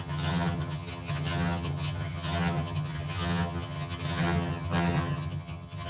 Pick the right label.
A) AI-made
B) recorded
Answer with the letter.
A